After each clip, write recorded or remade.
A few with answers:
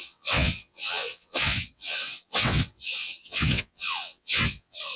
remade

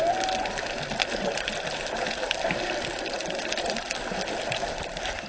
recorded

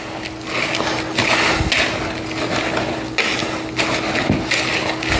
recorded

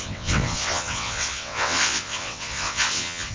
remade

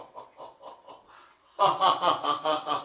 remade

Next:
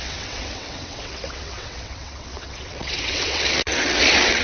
remade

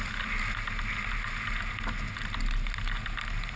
recorded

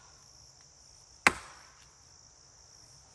recorded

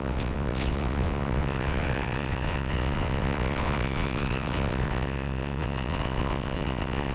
remade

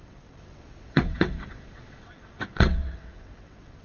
remade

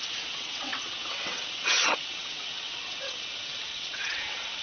remade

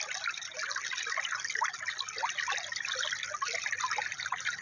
recorded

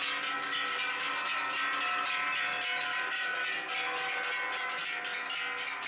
recorded